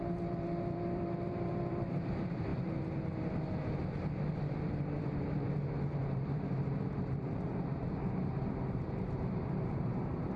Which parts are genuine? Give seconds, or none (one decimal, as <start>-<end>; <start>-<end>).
2.5-5.0